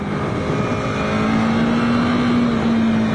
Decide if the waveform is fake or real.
real